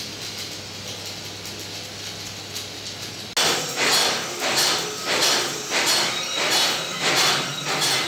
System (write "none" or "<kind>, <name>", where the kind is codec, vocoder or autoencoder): none